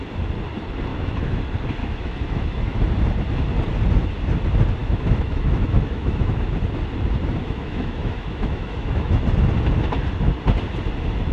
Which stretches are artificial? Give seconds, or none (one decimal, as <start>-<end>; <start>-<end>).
0.9-1.4; 1.8-2.8; 4.8-6.3; 7.4-9.2

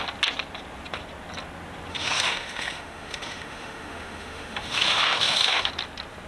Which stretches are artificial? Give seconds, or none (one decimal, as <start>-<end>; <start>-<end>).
1.9-5.7

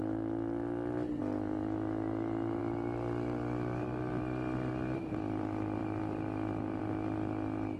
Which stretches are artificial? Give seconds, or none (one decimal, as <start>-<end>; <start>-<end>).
none

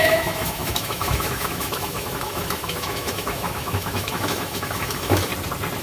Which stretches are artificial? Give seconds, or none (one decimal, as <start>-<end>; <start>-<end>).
0.0-5.3

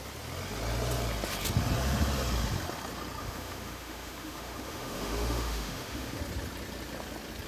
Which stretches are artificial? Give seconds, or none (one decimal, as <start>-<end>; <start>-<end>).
3.2-6.2